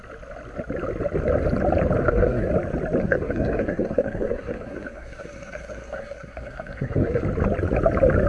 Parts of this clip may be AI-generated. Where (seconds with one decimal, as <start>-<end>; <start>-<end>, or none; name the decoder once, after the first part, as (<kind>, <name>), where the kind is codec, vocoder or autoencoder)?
2.0-2.5 (codec, SNAC); 3.0-7.2